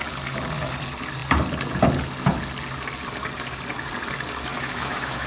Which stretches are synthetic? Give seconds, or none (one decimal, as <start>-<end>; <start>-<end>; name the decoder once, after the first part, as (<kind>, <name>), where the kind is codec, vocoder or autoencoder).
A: 4.5-5.3 (autoencoder, DAC-VAE)